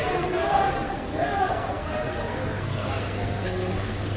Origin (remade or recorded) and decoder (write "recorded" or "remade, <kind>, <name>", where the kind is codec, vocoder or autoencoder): remade, codec, SNAC